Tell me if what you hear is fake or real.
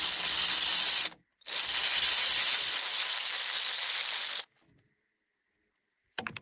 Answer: real